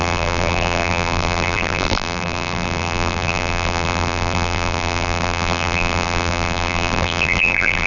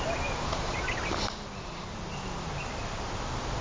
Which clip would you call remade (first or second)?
first